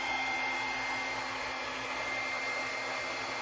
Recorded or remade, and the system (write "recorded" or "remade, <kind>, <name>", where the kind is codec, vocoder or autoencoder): recorded